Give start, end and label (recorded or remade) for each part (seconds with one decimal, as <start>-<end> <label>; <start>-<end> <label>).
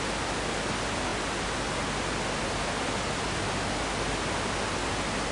0.0-5.3 recorded